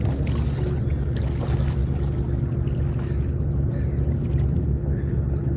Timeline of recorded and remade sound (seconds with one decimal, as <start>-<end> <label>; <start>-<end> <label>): 0.0-4.6 recorded; 4.6-5.6 remade